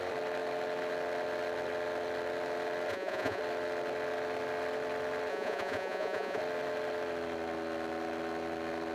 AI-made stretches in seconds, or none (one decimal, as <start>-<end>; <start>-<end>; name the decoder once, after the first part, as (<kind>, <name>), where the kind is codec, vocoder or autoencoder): 2.9-3.4 (vocoder, Vocos); 5.3-6.4